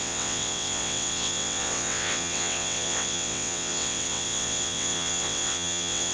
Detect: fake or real fake